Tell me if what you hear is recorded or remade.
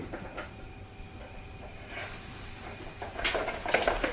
recorded